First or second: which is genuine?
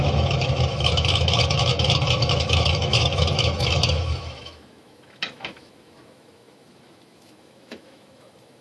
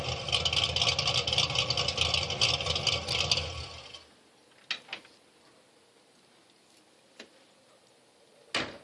second